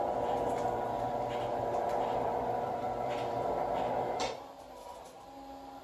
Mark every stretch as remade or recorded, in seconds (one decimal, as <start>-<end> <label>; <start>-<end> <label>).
0.0-1.5 recorded; 1.5-5.0 remade; 5.0-5.8 recorded